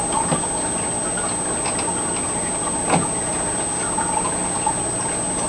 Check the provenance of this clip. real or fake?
real